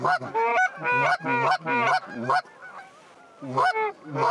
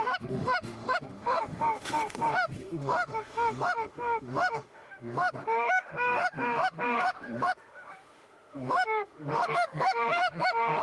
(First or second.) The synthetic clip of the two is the second